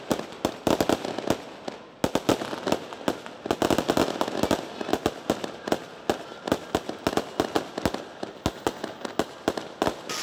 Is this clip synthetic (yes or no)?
no